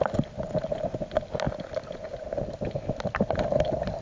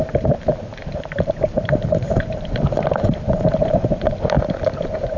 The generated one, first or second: second